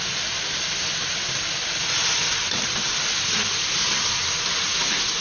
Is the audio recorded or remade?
recorded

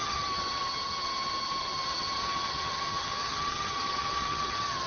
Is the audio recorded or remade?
remade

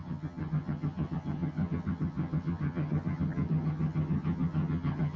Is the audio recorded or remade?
remade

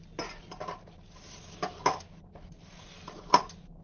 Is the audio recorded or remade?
recorded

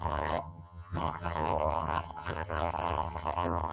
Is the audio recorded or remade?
remade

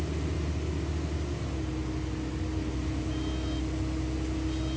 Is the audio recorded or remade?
recorded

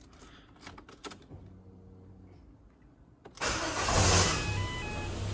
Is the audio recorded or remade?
recorded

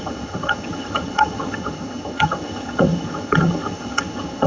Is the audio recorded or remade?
remade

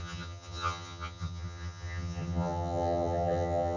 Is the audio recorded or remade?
remade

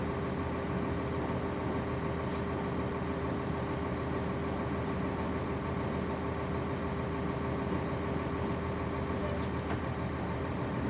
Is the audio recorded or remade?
recorded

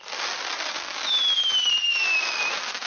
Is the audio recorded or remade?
recorded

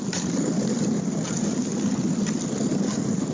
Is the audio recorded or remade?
recorded